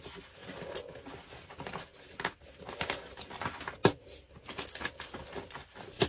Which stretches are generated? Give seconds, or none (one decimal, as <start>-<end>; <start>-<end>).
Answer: none